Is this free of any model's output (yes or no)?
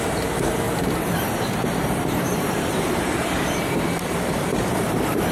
no